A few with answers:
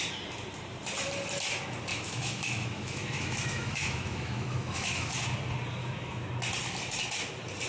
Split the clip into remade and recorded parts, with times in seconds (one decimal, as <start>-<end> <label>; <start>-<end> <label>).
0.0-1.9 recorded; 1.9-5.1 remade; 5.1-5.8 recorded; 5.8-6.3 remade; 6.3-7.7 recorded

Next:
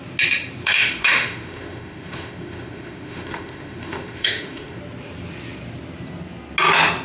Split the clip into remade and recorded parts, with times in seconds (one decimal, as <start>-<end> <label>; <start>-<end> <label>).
0.0-0.6 recorded; 0.6-4.8 remade; 4.8-7.0 recorded

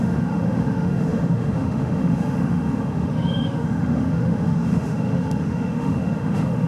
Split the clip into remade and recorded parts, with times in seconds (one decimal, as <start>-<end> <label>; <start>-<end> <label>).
0.0-6.7 remade

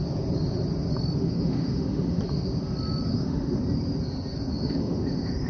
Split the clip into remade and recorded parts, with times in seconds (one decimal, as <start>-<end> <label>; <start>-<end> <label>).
0.0-1.2 recorded; 1.2-2.2 remade; 2.2-3.1 recorded; 3.1-3.6 remade; 3.6-4.5 recorded; 4.5-5.5 remade

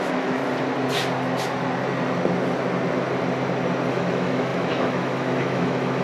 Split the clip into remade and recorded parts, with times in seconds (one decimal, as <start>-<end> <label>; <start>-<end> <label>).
0.0-0.4 remade; 0.4-3.9 recorded; 3.9-6.0 remade

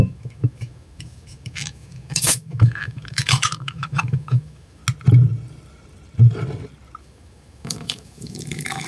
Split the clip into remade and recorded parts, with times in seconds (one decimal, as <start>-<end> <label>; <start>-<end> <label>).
0.0-4.8 remade; 4.8-7.0 recorded; 7.0-8.9 remade

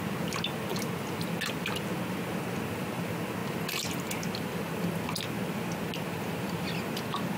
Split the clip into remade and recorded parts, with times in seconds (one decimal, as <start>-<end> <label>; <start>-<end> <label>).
0.0-7.4 recorded